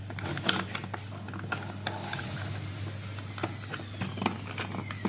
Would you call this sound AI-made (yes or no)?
no